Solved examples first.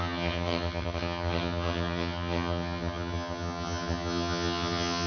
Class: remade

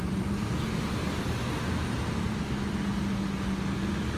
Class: recorded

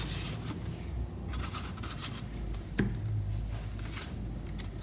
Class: recorded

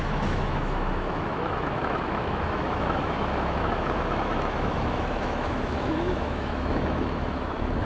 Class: remade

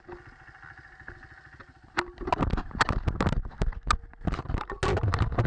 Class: recorded